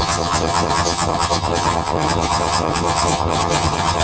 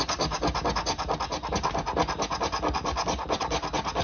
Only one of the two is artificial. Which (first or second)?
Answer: first